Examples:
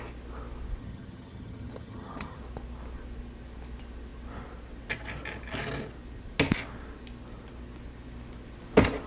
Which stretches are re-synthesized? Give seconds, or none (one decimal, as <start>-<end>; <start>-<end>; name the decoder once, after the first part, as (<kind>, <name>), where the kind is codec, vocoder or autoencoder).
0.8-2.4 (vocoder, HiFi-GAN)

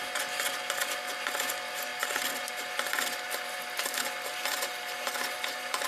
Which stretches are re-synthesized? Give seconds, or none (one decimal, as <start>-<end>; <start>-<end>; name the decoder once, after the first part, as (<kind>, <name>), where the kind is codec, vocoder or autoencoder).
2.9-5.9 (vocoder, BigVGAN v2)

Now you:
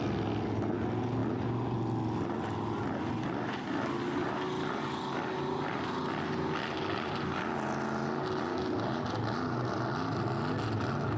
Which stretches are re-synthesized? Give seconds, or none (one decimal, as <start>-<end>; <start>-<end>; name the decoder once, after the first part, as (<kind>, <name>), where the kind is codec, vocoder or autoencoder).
none

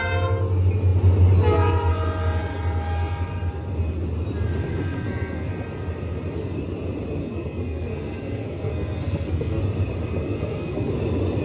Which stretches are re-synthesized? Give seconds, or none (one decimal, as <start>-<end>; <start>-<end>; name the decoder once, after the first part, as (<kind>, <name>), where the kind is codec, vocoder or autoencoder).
4.7-5.5 (codec, SNAC); 7.2-9.6; 10.2-10.9

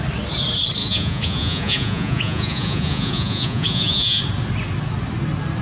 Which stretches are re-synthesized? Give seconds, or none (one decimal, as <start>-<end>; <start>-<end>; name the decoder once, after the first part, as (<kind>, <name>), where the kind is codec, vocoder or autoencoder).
0.8-4.2 (vocoder, Vocos)

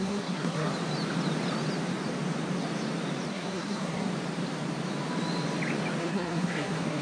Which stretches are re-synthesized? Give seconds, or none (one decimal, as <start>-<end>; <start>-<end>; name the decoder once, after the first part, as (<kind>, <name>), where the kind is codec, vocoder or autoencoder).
0.0-0.7 (codec, SNAC); 3.3-4.1; 6.0-7.0

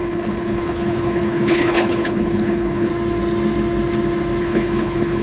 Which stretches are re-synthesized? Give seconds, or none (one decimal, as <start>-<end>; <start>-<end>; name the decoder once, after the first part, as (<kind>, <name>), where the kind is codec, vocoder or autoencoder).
0.0-2.9 (codec, HILCodec); 4.4-5.2

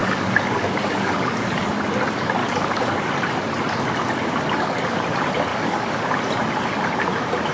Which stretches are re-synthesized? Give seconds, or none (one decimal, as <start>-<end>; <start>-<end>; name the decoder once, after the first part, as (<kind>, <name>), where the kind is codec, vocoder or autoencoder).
0.0-1.7 (codec, DAC); 2.4-3.1; 5.5-6.0